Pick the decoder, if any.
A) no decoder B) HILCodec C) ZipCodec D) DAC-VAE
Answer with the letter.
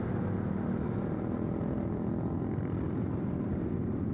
A